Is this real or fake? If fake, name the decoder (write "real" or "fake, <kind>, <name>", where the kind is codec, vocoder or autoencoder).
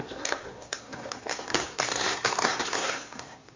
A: fake, codec, SNAC